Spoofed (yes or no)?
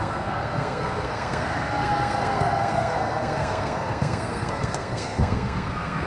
yes